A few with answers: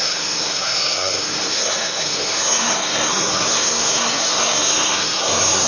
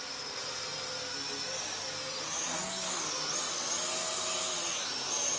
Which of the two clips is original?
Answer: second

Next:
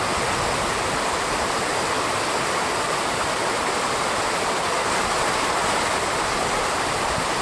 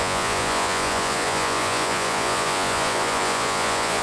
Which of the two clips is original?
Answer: first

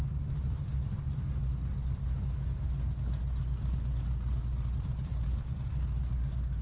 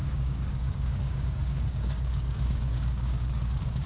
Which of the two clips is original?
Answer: first